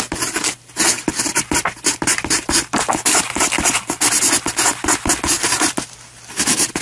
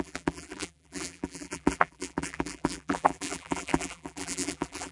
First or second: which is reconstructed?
second